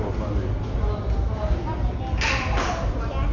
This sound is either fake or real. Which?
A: real